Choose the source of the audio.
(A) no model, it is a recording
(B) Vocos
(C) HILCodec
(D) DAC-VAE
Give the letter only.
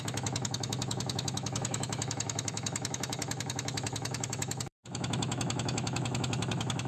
D